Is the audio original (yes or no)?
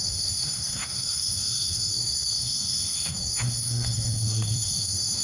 no